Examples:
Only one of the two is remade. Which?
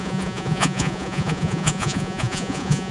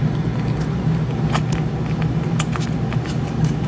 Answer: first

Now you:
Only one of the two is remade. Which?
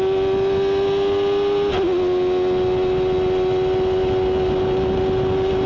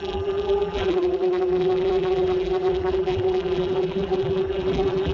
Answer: second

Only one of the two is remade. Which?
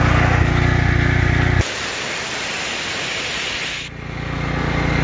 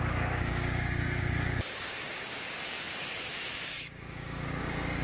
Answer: second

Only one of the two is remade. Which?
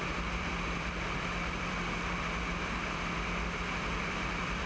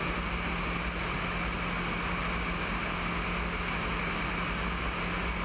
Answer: first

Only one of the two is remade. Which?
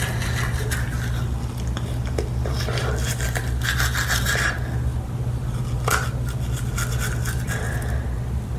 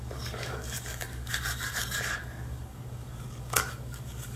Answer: second